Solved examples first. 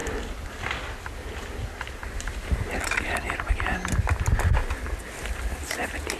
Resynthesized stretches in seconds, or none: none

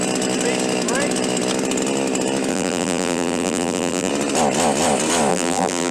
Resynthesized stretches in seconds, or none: 2.5-4.1 (vocoder, BigVGAN v2); 5.3-5.9